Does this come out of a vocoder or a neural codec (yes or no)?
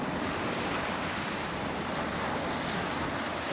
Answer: yes